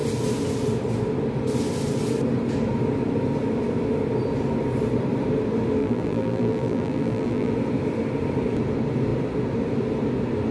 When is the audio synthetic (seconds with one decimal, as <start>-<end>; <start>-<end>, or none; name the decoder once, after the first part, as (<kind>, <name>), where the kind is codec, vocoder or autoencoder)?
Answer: 5.8-7.5 (vocoder, BigVGAN v2)